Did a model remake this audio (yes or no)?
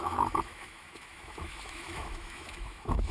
yes